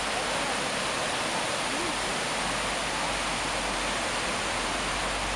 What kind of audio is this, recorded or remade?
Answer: recorded